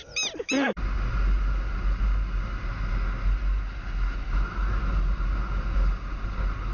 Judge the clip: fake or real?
real